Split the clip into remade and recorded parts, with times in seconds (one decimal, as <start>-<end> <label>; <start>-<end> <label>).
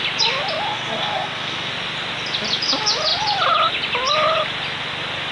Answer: 0.0-0.7 recorded; 0.7-1.7 remade; 1.7-5.3 recorded